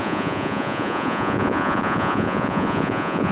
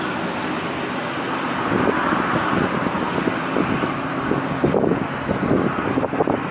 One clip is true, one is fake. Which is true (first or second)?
second